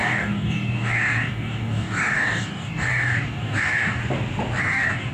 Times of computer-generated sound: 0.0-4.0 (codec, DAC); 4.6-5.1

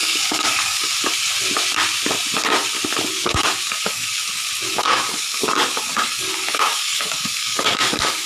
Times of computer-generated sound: 0.0-0.9 (codec, DAC); 3.1-4.2; 4.7-8.3